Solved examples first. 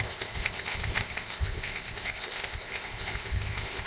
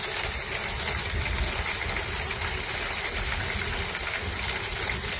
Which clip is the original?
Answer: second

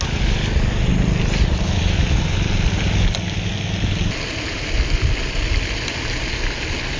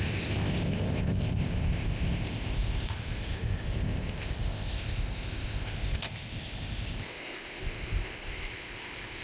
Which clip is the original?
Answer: first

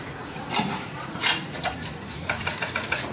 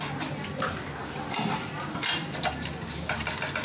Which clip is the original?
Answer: second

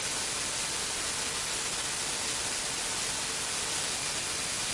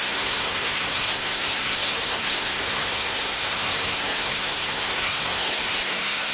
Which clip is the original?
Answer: first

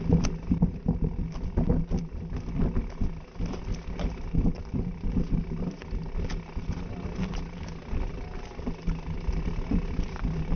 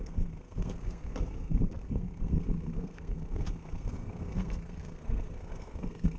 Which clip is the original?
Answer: first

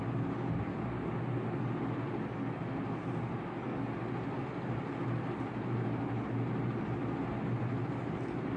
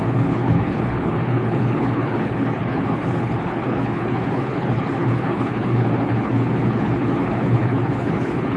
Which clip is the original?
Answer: first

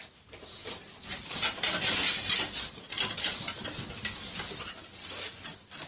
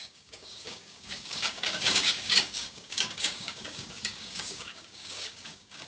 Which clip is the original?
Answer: first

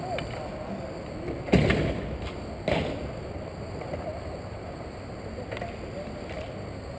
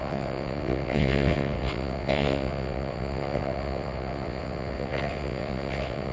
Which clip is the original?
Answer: first